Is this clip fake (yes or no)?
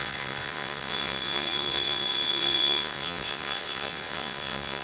yes